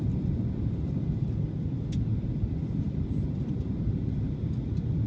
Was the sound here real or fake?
real